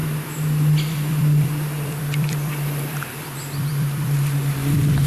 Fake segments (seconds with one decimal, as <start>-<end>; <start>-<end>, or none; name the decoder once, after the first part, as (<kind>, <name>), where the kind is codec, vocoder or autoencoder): 0.9-5.1 (vocoder, BigVGAN v2)

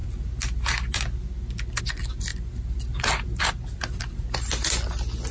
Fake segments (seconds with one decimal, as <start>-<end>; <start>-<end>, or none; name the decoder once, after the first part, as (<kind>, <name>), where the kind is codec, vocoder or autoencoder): 2.3-3.4 (vocoder, BigVGAN v2)